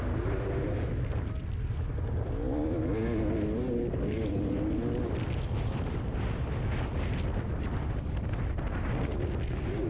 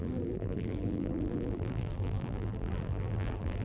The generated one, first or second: second